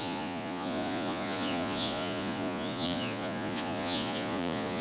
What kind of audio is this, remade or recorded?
remade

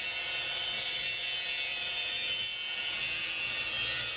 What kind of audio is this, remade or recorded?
recorded